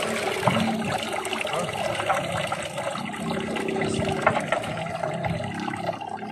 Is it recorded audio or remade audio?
recorded